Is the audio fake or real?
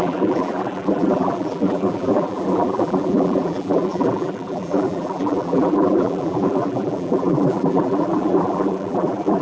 fake